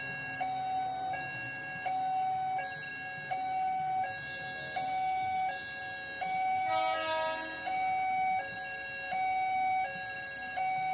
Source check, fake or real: real